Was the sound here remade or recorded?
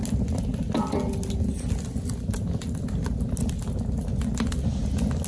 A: recorded